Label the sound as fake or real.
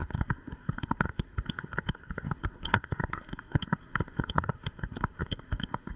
fake